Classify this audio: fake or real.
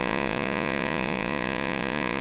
fake